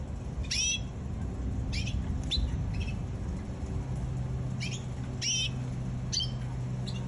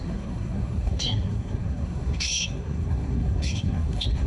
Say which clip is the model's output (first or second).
second